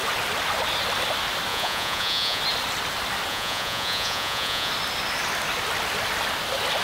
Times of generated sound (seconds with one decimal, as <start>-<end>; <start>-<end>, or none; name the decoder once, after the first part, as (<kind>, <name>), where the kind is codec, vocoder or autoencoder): 1.5-2.4 (vocoder, Vocos); 3.3-4.7